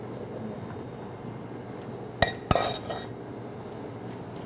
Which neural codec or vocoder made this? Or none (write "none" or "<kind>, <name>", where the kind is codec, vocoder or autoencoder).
none